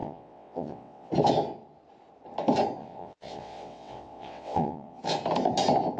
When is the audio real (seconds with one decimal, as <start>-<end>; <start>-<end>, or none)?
1.1-2.8; 5.0-6.0